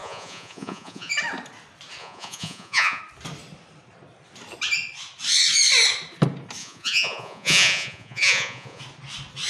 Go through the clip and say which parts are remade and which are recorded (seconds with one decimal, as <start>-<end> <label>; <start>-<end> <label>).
0.0-1.1 remade; 1.1-2.0 recorded; 2.0-3.0 remade; 3.0-6.6 recorded; 6.6-8.8 remade; 8.8-9.5 recorded